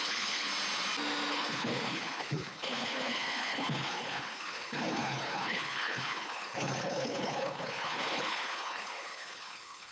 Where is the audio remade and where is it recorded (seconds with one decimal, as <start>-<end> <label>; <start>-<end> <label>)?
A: 0.0-0.5 remade; 0.5-1.3 recorded; 1.3-9.9 remade